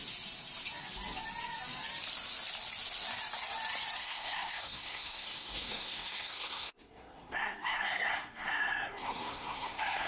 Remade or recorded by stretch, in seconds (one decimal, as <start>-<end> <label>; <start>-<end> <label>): 0.0-4.0 recorded; 4.0-10.1 remade